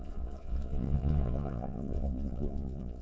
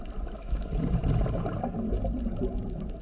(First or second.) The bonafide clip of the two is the second